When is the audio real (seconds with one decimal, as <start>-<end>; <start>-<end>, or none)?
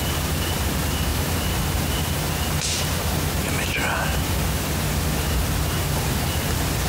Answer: 0.0-6.9